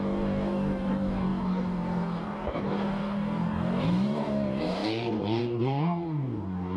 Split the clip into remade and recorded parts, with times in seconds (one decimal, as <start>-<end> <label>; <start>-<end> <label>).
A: 0.0-6.8 remade